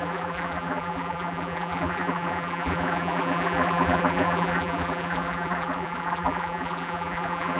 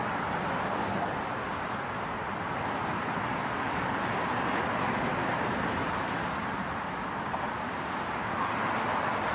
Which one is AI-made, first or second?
first